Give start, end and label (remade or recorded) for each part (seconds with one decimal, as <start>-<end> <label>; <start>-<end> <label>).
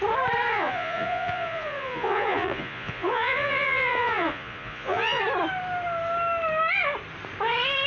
0.0-0.5 recorded; 0.5-5.2 remade; 5.2-7.9 recorded